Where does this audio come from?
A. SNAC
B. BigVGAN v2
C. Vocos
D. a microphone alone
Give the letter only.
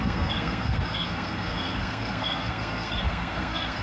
A